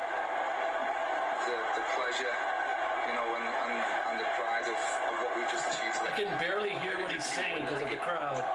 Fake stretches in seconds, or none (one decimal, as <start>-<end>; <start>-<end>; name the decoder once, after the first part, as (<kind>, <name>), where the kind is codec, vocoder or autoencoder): none

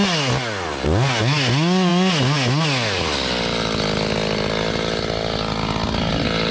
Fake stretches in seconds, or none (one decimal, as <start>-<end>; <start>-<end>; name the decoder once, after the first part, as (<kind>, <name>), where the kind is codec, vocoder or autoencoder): none

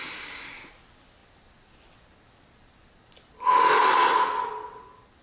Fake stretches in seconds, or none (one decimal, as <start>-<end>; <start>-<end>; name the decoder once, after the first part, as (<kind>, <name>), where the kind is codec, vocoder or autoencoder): none

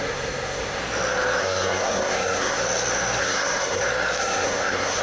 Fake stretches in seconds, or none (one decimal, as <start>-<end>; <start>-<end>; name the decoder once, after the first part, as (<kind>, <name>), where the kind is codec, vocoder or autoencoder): 0.0-0.8 (codec, SNAC); 1.4-2.6; 3.2-3.8; 4.2-5.0